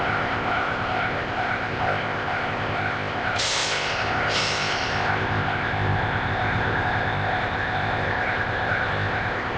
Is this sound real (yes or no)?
no